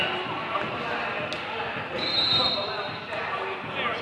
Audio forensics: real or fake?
real